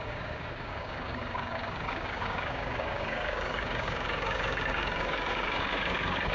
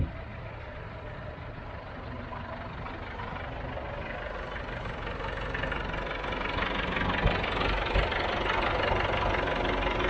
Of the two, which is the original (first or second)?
second